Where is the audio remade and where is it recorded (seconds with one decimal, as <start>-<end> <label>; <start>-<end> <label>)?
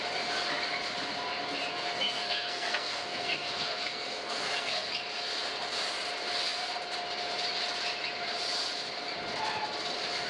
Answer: 0.0-1.7 recorded; 1.7-4.9 remade; 4.9-10.3 recorded